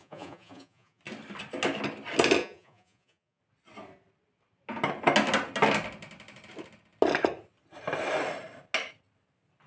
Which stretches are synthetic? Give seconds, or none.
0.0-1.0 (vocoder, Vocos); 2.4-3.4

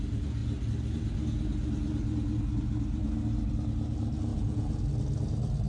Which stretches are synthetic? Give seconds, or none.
4.3-4.8 (vocoder, Vocos)

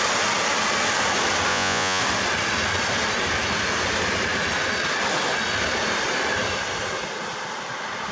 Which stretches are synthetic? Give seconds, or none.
1.5-2.0 (vocoder, Vocos)

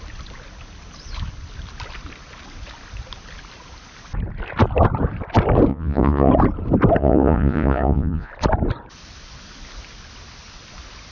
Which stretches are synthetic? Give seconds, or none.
5.7-6.3 (vocoder, Vocos); 7.0-8.3

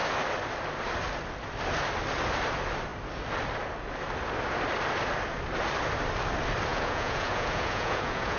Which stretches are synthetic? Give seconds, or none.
6.7-8.4 (vocoder, Vocos)

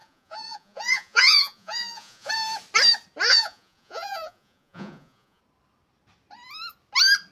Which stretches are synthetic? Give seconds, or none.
0.0-2.3 (vocoder, Vocos); 3.3-5.4

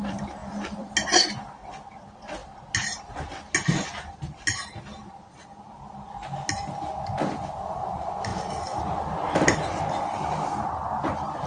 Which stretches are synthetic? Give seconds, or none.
none

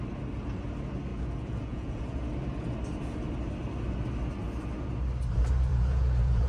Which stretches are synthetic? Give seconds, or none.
1.1-2.2 (vocoder, Vocos); 5.7-6.5